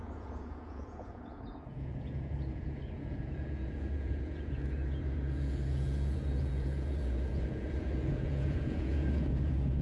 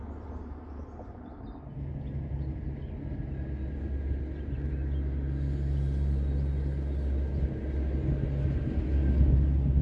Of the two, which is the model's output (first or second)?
first